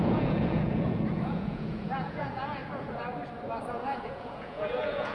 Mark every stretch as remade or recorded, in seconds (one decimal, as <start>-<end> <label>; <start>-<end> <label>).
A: 0.0-2.6 remade; 2.6-3.7 recorded; 3.7-5.1 remade

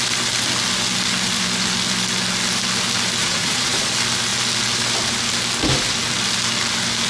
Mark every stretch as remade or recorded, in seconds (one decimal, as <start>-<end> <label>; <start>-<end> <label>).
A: 0.0-3.2 recorded; 3.2-3.9 remade; 3.9-7.1 recorded